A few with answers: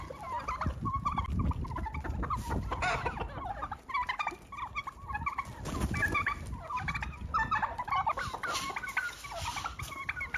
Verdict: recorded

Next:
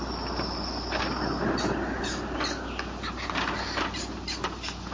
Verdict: recorded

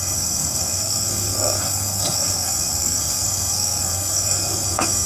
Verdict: remade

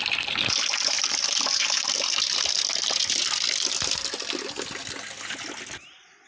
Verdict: recorded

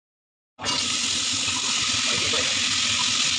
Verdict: recorded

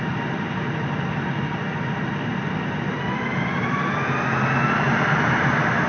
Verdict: recorded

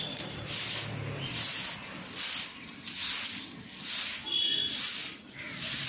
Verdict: recorded